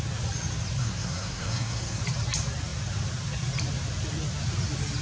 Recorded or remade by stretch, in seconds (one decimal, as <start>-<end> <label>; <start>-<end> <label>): 0.0-0.8 recorded; 0.8-2.0 remade; 2.0-5.0 recorded